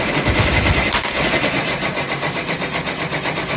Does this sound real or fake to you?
real